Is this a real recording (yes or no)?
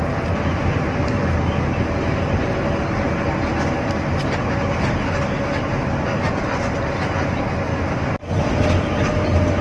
yes